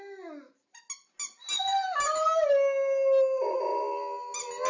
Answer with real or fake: real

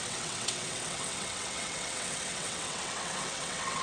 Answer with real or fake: fake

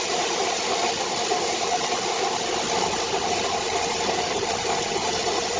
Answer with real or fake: real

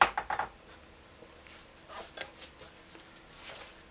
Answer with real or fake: real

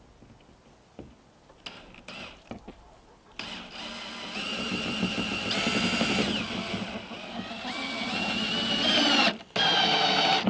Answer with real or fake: real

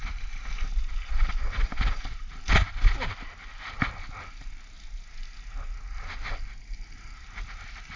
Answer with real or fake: real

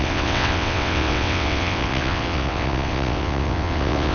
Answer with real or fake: fake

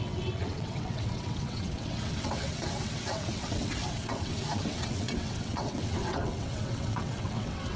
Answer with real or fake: fake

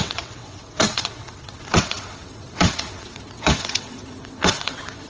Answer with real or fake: fake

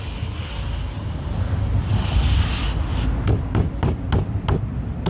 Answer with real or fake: real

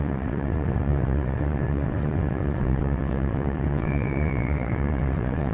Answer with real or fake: fake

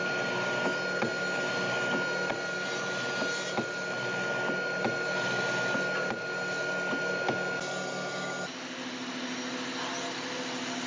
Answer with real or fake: real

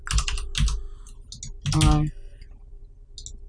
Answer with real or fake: real